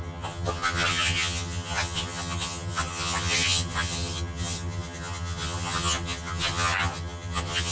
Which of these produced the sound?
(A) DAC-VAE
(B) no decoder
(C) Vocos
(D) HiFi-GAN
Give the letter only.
D